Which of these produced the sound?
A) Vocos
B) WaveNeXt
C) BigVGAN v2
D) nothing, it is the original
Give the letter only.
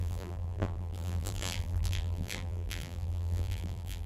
C